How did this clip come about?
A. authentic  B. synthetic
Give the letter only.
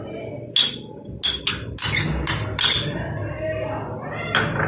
A